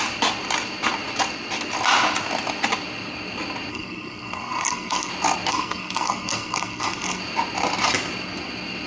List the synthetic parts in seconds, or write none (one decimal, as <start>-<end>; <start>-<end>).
3.7-5.1; 5.5-7.2